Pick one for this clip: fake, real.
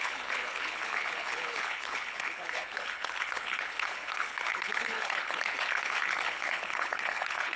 fake